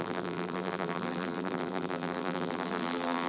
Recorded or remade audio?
remade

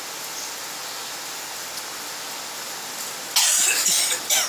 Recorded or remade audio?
recorded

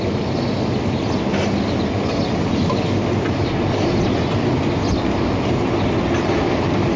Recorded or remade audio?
recorded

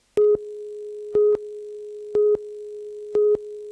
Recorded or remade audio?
recorded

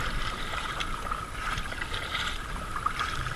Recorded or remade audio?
remade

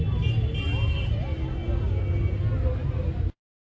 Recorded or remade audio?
recorded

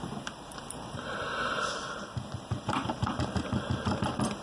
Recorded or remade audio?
remade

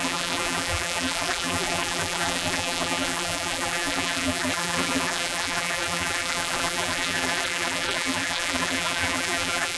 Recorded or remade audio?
remade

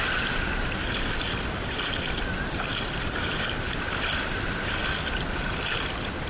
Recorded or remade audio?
remade